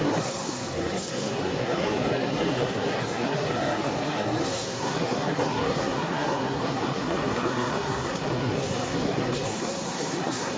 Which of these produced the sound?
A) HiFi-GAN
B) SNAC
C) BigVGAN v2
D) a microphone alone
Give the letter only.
B